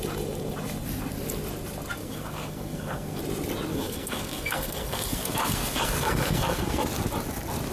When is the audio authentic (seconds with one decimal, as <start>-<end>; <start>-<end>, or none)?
0.0-2.0; 3.2-3.7; 6.8-7.7